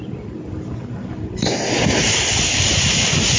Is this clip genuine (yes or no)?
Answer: yes